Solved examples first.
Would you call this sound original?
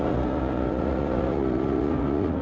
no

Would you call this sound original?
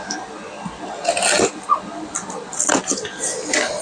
yes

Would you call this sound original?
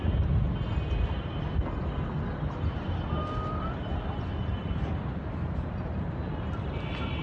yes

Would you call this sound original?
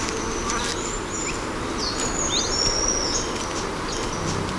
yes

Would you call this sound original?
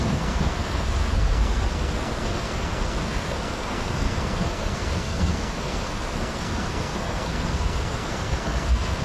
no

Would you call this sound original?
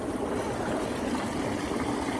yes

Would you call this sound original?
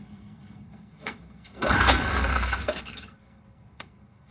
no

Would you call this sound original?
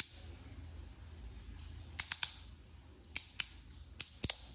yes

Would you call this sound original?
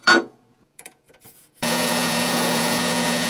no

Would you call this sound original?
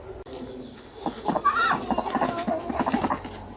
yes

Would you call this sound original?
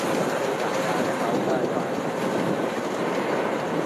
yes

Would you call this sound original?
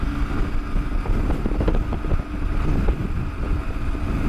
yes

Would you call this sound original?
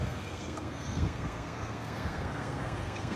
no